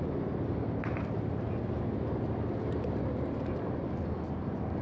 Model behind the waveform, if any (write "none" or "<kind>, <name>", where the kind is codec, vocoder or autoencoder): none